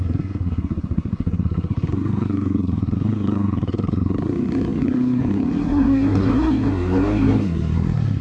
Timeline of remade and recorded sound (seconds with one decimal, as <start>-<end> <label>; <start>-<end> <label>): 0.0-8.2 remade